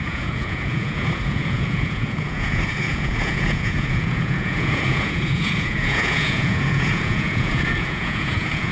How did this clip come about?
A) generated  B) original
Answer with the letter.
A